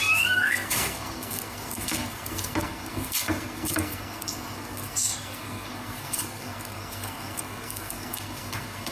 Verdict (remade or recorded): remade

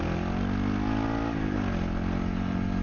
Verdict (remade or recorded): recorded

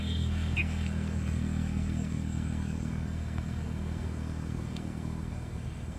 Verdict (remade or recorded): remade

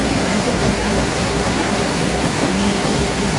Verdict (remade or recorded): remade